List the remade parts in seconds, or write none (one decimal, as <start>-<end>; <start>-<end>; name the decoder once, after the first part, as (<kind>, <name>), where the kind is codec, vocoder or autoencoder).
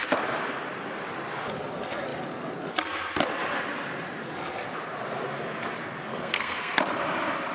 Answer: 6.1-6.8 (codec, SNAC)